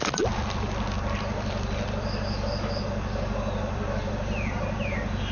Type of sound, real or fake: real